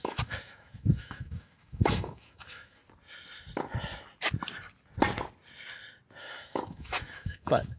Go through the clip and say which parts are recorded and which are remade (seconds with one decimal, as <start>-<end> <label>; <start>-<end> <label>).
0.0-2.8 remade; 2.8-6.2 recorded; 6.2-7.8 remade